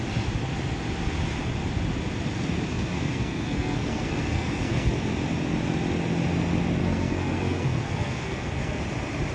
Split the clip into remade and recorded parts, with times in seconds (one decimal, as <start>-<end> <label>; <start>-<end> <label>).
0.0-2.7 recorded; 2.7-4.9 remade; 4.9-6.8 recorded; 6.8-8.8 remade; 8.8-9.3 recorded